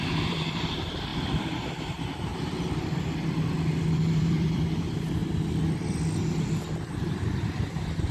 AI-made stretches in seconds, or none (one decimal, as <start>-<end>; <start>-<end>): 0.0-1.1; 1.7-2.3; 4.0-5.2; 6.8-8.1